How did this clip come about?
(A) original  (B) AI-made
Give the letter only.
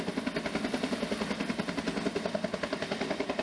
A